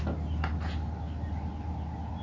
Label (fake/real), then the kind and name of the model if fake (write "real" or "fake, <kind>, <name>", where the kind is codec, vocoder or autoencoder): real